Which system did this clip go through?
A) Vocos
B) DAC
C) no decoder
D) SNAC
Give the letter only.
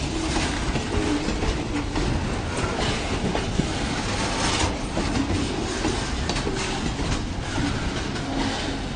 C